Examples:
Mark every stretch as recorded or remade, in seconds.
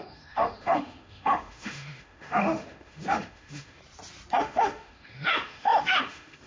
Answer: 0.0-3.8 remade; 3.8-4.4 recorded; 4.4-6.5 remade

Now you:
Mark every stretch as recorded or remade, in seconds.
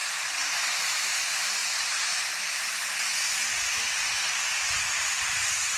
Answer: 0.0-5.8 recorded